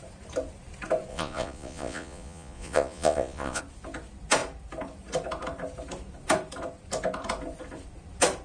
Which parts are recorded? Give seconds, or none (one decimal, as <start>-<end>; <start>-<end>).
0.0-1.1; 3.6-8.4